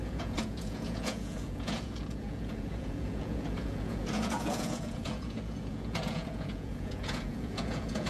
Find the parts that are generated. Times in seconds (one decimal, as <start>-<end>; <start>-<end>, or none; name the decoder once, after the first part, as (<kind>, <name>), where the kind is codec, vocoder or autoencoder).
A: 0.0-8.1 (vocoder, Vocos)